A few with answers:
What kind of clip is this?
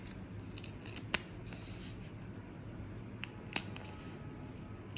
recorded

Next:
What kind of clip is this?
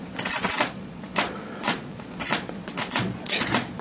remade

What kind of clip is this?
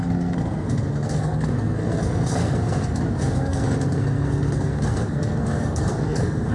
remade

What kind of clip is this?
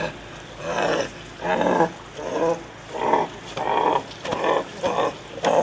recorded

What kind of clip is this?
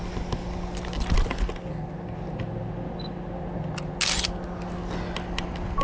recorded